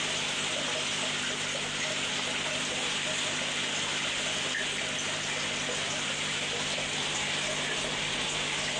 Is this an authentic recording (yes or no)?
yes